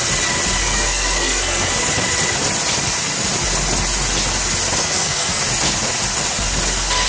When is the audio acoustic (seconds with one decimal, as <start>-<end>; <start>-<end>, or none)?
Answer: 0.0-0.6; 1.7-4.8; 5.4-7.1